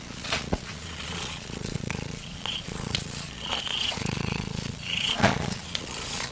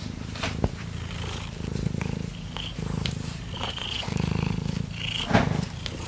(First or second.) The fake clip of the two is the first